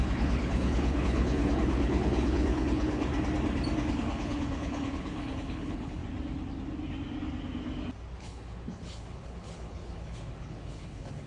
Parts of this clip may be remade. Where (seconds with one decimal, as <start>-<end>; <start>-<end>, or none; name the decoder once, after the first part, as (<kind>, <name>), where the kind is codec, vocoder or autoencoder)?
0.0-3.1 (codec, HILCodec); 3.9-6.0; 8.2-11.3